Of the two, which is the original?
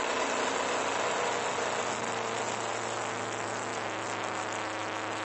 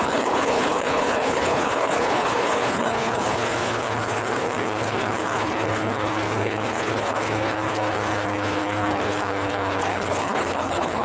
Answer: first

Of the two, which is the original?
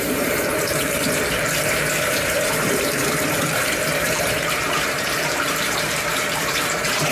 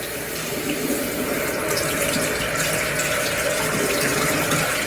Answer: second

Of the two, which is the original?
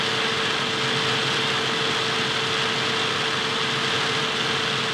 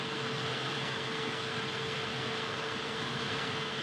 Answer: first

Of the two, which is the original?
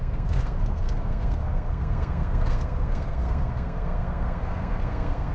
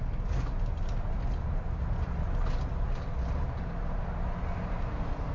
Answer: second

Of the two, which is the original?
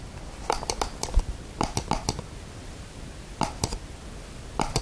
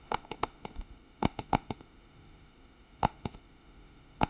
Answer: first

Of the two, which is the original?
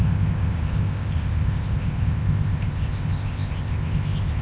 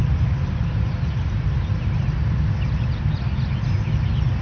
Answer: second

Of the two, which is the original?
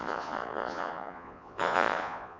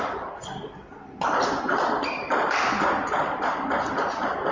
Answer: second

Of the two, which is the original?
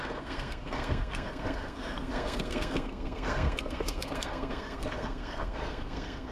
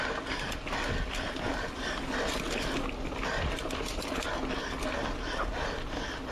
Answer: second